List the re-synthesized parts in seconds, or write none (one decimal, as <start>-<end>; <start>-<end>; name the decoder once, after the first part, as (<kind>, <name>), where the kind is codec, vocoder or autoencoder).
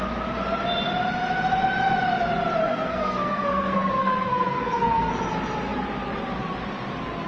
2.6-5.1 (codec, SNAC)